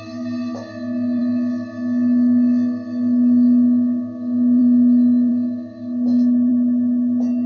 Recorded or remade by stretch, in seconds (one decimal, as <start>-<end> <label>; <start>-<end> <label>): 0.0-7.5 recorded